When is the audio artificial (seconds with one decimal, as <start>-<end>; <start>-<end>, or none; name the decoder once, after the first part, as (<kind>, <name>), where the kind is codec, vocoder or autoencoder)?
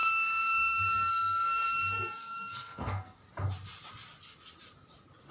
0.0-3.2 (codec, SNAC)